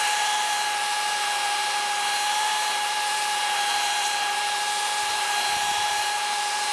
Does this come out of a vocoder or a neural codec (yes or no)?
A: yes